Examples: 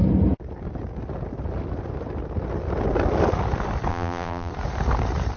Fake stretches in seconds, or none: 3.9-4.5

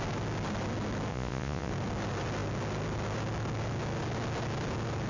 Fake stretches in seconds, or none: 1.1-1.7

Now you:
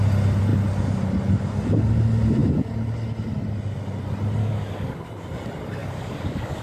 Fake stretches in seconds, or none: 4.4-5.0; 5.8-6.6